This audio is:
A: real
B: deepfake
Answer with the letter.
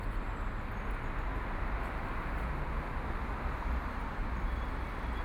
A